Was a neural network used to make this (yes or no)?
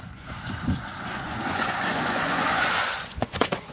yes